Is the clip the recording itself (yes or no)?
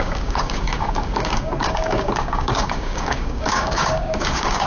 no